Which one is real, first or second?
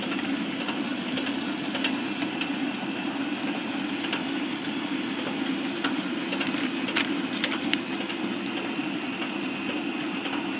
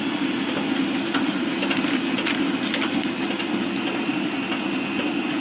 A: second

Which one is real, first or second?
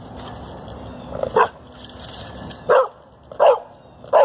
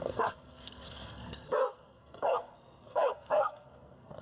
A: first